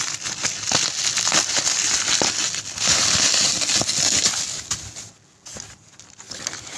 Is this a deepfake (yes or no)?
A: no